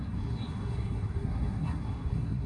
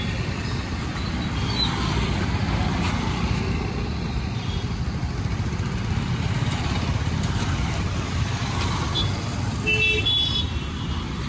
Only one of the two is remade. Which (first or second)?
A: first